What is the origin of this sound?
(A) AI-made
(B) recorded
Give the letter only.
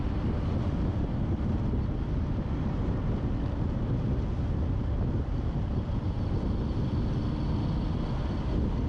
B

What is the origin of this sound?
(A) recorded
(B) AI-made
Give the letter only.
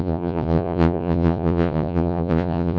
B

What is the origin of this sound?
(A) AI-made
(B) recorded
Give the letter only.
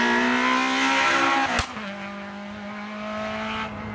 B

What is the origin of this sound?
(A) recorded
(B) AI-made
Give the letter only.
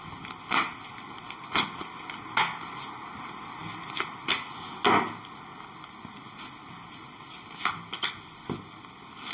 A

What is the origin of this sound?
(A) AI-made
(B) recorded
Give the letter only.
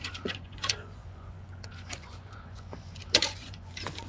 A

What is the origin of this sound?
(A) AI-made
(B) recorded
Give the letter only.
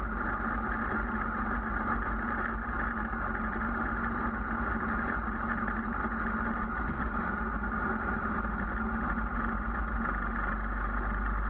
B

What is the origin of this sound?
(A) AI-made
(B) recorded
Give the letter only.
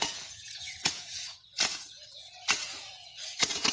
A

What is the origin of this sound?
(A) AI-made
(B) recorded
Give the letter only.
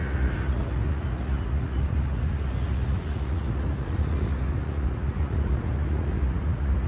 A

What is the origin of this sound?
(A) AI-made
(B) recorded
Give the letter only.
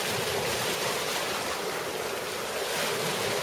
B